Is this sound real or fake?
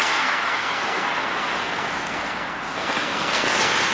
fake